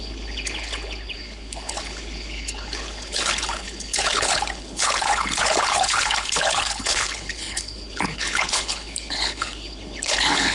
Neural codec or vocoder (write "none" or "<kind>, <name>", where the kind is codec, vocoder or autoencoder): codec, HILCodec